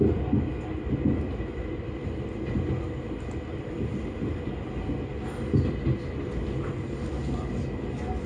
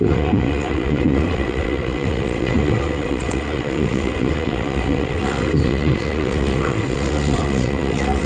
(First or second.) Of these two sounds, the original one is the first